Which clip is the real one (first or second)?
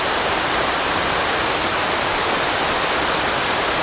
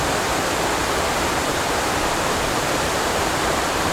first